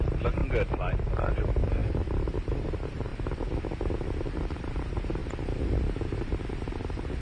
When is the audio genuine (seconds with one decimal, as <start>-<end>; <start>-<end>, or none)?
0.4-1.1; 3.1-4.2